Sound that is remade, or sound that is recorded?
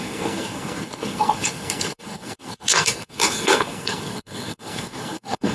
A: remade